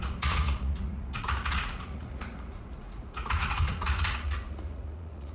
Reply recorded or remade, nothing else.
remade